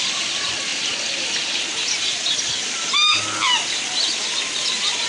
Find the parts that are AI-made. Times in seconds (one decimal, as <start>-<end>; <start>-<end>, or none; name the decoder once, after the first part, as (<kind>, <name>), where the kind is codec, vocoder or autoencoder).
none